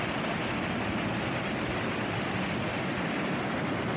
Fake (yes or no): no